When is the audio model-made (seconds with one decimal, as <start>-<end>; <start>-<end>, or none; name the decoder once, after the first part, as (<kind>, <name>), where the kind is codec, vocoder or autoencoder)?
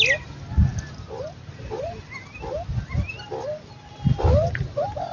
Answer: none